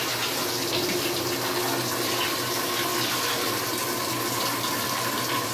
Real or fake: real